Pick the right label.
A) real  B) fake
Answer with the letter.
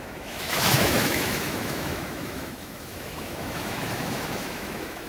B